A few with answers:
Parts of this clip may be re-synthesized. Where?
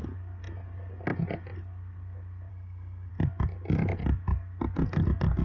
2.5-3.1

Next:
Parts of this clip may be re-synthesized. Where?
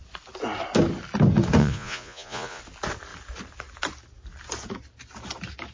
1.6-2.6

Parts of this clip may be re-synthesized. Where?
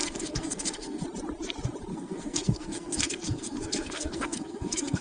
0.0-1.0; 1.9-5.0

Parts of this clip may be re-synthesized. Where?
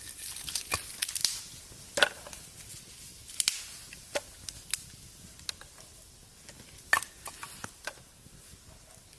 none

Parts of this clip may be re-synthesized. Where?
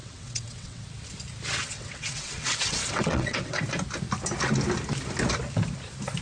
0.0-0.8; 1.6-3.6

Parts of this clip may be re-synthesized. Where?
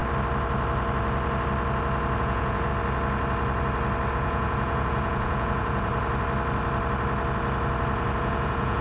2.2-2.7; 4.1-5.9; 8.2-8.8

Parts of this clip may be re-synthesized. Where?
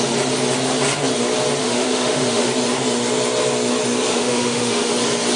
1.6-2.5; 4.1-4.9